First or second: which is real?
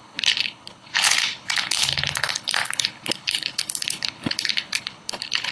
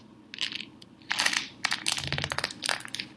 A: second